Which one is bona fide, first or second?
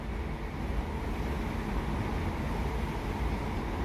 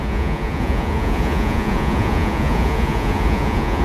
first